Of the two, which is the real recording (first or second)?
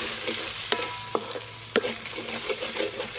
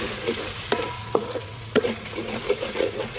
first